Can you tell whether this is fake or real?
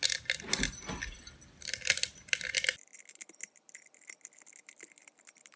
real